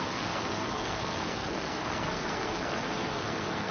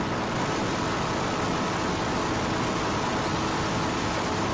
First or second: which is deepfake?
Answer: first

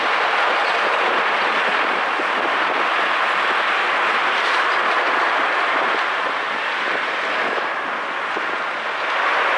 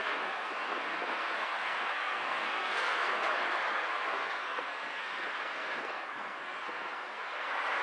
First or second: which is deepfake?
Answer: second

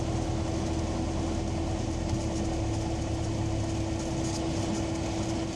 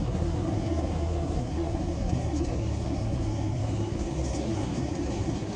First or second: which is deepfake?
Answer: second